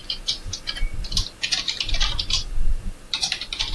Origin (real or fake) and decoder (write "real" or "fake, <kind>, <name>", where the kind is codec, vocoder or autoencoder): fake, vocoder, BigVGAN v2